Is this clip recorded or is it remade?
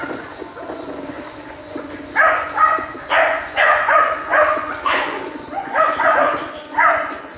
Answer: remade